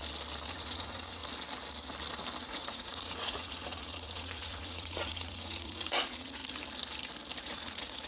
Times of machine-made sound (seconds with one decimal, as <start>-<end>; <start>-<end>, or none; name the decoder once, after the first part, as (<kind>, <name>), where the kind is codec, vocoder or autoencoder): 0.5-1.2 (vocoder, Vocos); 2.4-6.4; 7.4-8.1